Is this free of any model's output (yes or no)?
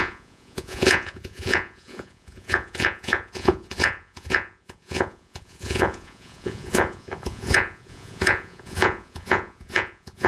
no